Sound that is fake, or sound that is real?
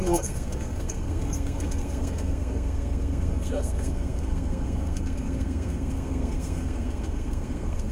fake